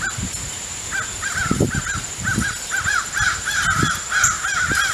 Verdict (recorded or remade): recorded